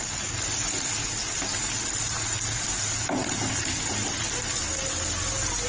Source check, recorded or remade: recorded